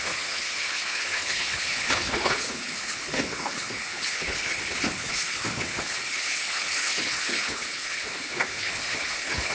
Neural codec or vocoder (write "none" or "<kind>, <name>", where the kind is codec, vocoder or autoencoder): codec, HILCodec